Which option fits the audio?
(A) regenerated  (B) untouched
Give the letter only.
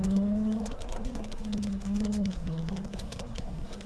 A